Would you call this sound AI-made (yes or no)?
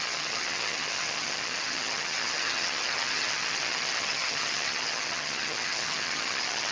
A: yes